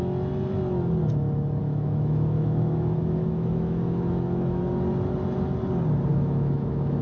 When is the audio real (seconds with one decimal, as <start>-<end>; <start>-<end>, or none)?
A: 0.0-1.6; 4.6-6.1